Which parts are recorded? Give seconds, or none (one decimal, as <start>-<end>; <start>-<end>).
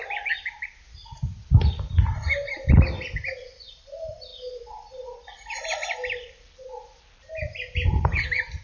0.0-8.6